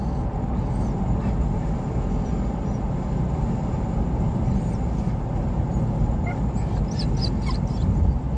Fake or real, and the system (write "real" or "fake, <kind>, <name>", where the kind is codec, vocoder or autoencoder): real